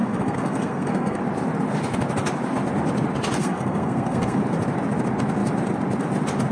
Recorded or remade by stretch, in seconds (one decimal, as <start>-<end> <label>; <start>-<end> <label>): 0.0-1.2 remade; 1.2-3.4 recorded; 3.4-4.4 remade; 4.4-6.5 recorded